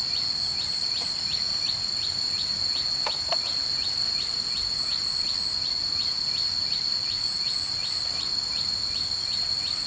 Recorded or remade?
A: recorded